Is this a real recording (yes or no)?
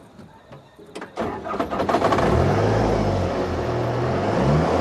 yes